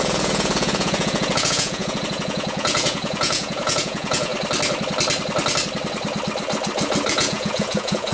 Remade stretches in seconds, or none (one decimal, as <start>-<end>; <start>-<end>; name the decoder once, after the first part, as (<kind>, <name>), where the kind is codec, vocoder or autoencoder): 0.0-4.3 (vocoder, Vocos); 7.1-8.1